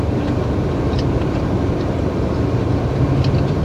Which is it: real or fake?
real